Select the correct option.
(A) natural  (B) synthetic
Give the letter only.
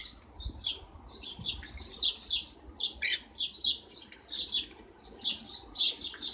A